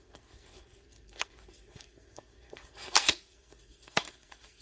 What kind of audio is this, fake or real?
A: fake